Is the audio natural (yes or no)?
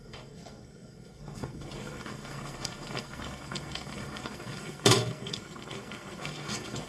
no